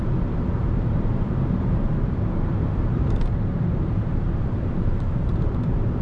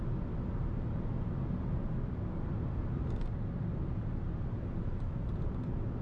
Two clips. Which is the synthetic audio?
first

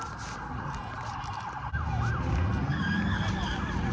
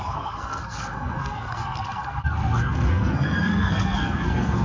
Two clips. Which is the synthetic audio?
second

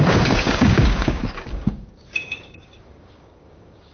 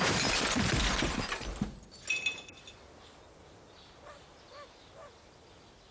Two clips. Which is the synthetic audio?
first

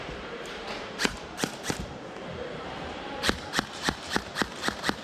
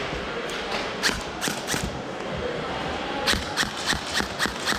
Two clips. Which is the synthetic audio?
first